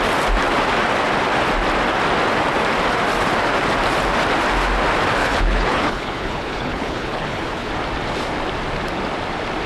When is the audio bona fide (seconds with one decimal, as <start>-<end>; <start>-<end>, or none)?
0.0-5.2; 7.7-9.7

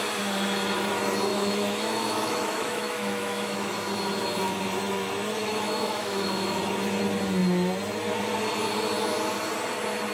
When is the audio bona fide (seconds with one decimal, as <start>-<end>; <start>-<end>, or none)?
0.0-1.3; 3.7-5.4; 6.6-10.1

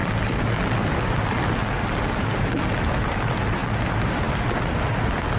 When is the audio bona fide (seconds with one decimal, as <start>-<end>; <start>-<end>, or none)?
0.0-5.4

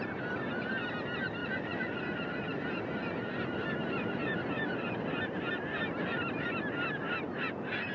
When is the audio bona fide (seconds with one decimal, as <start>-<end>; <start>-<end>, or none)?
0.0-1.4; 2.0-7.9

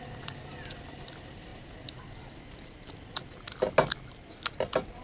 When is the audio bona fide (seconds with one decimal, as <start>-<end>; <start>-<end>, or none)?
0.0-5.0

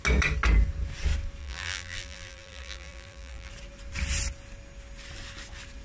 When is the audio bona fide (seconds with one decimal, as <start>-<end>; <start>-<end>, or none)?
0.0-1.4; 3.5-5.8

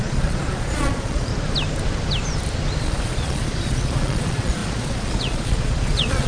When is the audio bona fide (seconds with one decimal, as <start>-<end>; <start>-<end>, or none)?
1.3-2.8